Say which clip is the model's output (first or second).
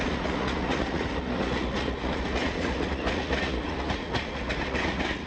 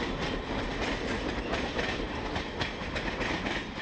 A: first